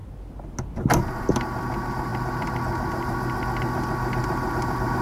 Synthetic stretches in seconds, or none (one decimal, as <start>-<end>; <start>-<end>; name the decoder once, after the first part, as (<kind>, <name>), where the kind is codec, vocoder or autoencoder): none